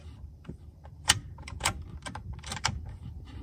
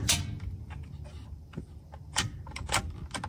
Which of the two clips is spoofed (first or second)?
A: first